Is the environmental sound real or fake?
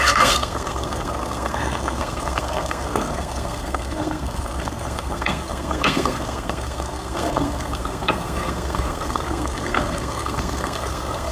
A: fake